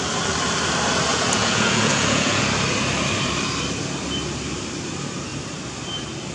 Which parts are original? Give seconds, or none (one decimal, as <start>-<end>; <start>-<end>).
0.0-1.1; 2.4-6.3